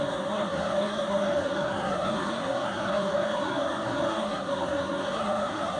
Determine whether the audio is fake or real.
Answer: fake